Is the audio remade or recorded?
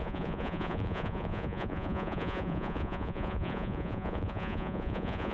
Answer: remade